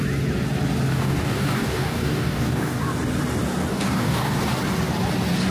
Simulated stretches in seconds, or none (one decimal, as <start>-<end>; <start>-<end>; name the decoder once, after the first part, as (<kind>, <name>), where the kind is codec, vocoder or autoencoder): 0.9-2.8 (codec, DAC); 3.7-4.4